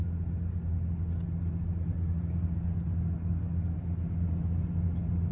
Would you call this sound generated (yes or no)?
no